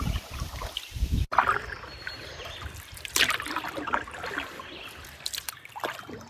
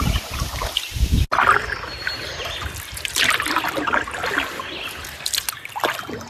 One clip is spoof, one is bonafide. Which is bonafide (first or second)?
second